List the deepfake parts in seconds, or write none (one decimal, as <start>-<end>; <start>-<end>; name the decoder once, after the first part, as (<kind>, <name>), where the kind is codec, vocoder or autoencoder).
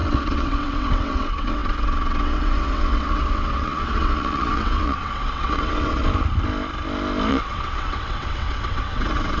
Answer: 0.0-6.0 (vocoder, WaveNeXt); 7.3-9.4